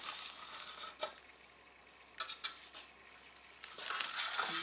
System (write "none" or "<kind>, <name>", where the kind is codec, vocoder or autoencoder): none